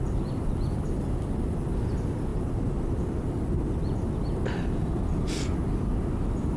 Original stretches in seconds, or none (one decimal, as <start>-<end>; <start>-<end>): 0.0-6.6